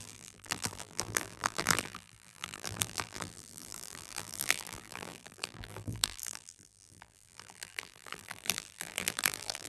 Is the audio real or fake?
fake